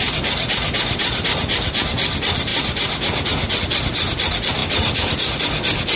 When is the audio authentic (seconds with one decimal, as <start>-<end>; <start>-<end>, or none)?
0.0-4.6; 5.4-6.0